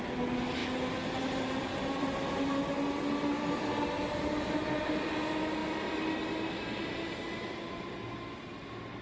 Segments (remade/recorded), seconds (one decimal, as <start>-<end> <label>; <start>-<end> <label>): 0.0-9.0 recorded